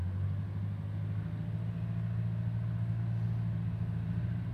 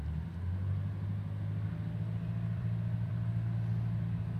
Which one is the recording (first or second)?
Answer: first